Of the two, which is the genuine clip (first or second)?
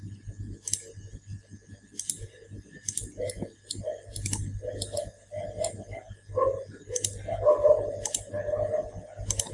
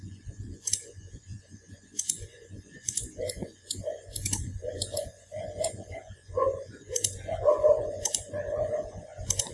first